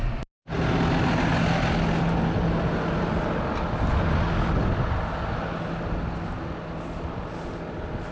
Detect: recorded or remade recorded